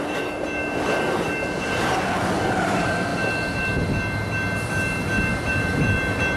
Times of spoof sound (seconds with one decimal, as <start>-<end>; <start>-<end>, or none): 0.0-0.6; 1.6-3.1; 5.5-6.4

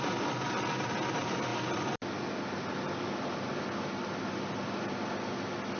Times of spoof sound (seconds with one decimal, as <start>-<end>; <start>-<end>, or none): none

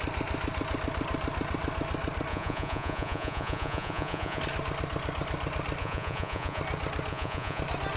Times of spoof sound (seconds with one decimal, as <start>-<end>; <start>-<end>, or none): 2.3-4.4; 5.8-6.6; 7.1-7.6